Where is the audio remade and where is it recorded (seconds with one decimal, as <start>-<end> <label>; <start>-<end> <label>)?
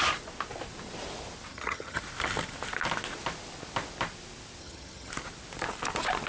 0.0-1.5 recorded; 1.5-2.0 remade; 2.0-4.6 recorded; 4.6-5.1 remade; 5.1-6.3 recorded